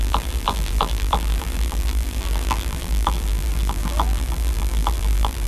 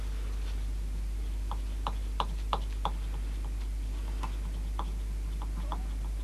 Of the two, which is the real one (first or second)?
second